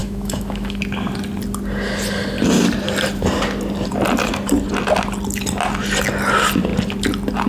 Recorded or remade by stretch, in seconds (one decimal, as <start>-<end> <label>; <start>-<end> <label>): 0.0-0.8 remade; 0.8-7.5 recorded